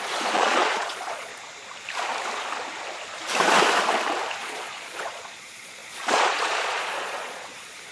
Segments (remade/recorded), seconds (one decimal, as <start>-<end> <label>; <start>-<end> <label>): 0.0-1.3 remade; 1.3-4.4 recorded; 4.4-7.9 remade